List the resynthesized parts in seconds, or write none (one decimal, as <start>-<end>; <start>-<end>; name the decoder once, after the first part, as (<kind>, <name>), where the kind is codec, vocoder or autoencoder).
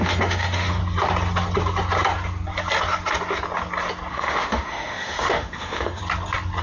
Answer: 0.0-0.8 (autoencoder, DAC-VAE); 4.1-6.0